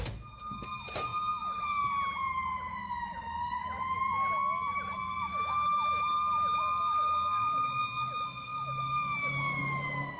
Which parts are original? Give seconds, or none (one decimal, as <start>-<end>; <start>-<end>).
0.0-5.3; 6.0-10.2